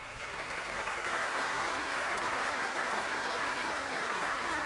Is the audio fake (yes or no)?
yes